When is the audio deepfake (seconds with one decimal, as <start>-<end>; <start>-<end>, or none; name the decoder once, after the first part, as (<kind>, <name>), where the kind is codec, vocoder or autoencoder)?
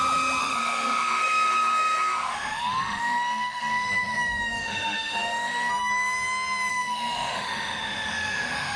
0.4-5.7 (autoencoder, DAC-VAE); 6.7-8.8